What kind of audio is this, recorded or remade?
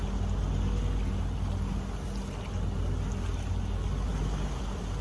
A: recorded